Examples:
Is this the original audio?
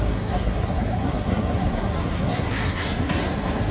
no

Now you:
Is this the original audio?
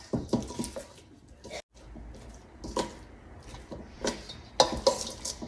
yes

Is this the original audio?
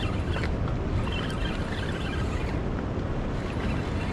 yes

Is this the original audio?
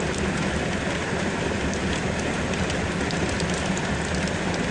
yes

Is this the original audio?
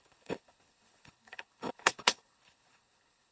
no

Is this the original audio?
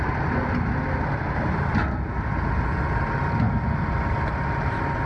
yes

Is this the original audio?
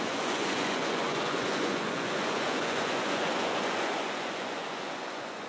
no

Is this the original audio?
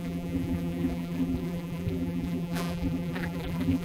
no